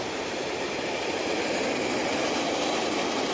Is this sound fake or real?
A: real